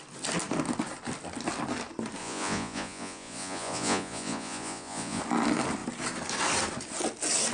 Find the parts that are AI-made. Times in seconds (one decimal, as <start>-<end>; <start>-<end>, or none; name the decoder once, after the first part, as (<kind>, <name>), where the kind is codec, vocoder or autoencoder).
2.2-5.2 (vocoder, Vocos)